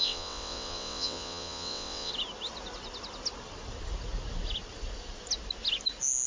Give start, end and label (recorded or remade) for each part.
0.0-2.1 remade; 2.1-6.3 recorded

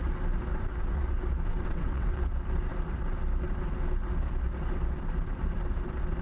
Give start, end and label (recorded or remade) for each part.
0.0-0.5 recorded; 0.5-1.1 remade; 1.1-1.5 recorded; 1.5-2.3 remade; 2.3-6.2 recorded